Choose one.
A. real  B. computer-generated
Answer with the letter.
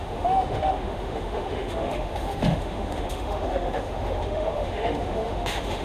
B